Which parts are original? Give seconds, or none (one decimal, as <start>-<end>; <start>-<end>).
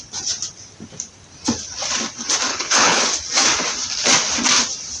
0.0-2.5; 3.0-5.0